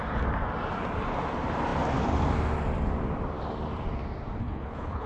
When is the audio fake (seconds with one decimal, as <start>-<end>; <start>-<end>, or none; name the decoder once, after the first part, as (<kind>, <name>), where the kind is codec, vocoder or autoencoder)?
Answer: 4.4-5.1 (codec, HILCodec)